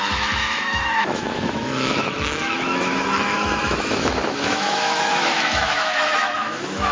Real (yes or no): no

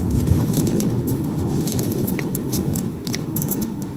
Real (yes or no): no